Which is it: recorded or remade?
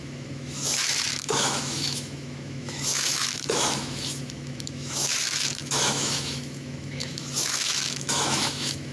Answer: remade